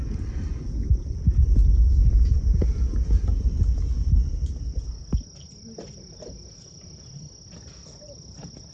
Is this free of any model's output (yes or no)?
yes